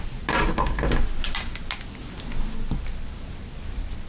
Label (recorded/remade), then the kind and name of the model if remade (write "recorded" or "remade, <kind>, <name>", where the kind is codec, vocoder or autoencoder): recorded